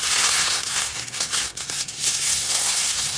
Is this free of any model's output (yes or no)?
no